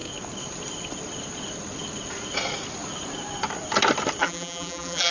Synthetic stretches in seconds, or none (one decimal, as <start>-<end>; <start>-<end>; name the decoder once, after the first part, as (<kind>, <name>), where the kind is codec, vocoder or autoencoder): 4.2-5.1 (vocoder, BigVGAN v2)